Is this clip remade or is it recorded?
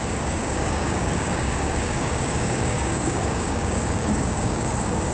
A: remade